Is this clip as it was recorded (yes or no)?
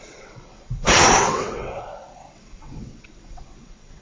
no